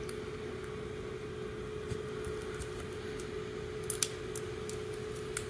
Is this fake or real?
real